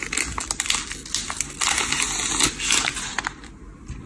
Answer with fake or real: real